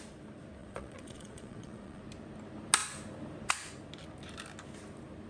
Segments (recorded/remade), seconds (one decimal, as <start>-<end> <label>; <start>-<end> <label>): 0.0-0.6 recorded; 0.6-2.0 remade; 2.0-5.3 recorded